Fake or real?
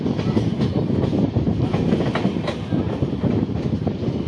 real